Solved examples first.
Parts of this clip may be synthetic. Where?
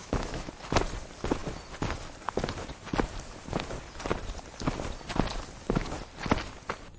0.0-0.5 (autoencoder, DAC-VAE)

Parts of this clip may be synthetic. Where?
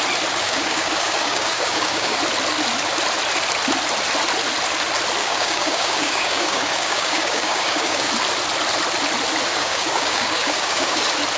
0.4-2.2 (codec, DAC); 5.2-8.1; 9.5-11.0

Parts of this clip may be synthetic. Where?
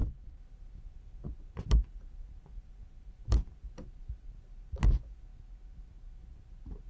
0.0-5.3 (vocoder, BigVGAN v2); 6.2-6.9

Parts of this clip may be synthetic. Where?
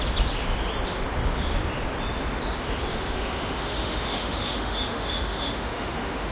2.9-6.3 (autoencoder, DAC-VAE)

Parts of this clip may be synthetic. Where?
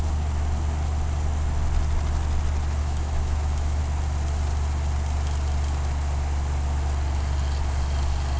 2.8-3.8 (autoencoder, DAC-VAE)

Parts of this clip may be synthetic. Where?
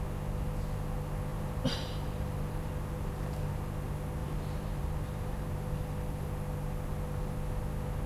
1.3-2.7 (vocoder, BigVGAN v2); 4.2-5.5